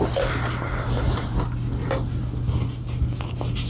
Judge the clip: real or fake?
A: real